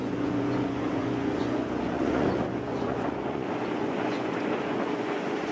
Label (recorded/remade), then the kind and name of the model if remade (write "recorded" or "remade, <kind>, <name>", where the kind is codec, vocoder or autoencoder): remade, vocoder, Vocos